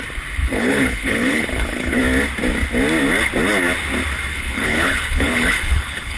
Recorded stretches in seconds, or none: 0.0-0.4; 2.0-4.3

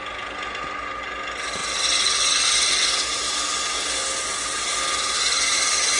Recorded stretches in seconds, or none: 0.0-6.0

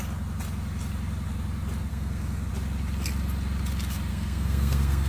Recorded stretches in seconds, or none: 0.0-1.9; 2.5-4.1

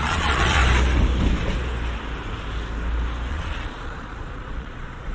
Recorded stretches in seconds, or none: 0.6-3.3

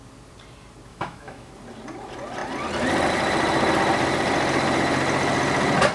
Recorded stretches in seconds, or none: 0.0-0.9; 1.5-5.9

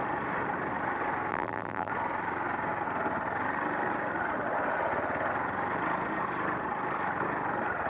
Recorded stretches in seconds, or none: 0.0-1.3; 1.9-7.9